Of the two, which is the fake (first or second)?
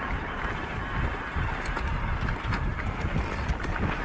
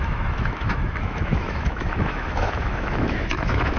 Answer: second